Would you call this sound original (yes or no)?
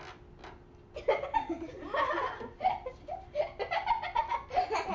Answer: yes